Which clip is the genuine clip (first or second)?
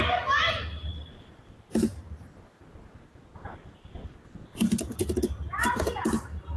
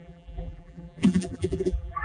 first